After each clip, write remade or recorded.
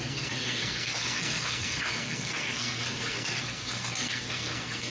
remade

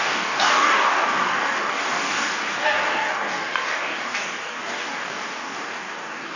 remade